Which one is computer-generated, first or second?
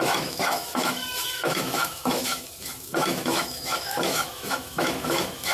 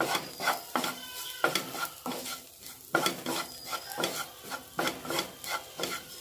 first